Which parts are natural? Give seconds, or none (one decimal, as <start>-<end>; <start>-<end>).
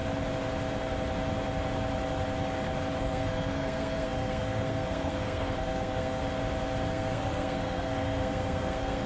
0.0-3.0; 6.2-6.9